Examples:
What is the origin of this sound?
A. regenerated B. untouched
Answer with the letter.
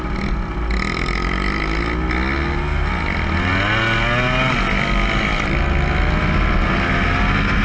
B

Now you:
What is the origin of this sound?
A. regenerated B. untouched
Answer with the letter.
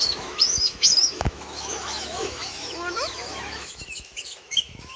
A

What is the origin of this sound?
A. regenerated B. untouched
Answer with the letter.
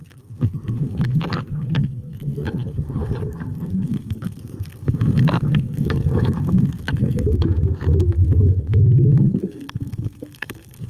A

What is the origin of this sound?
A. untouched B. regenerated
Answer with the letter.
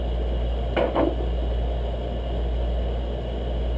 A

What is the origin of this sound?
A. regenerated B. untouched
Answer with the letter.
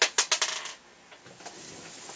B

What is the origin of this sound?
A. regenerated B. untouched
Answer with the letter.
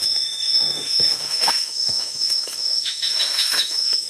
A